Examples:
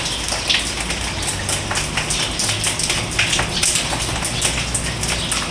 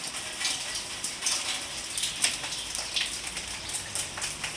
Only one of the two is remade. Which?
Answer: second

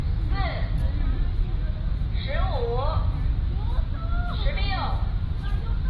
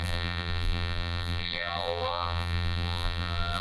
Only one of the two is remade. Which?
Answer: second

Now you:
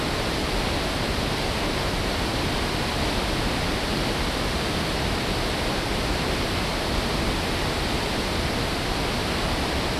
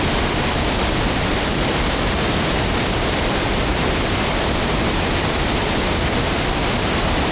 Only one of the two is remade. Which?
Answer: second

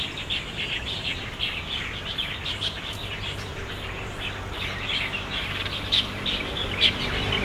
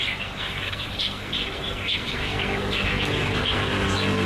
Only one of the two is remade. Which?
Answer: second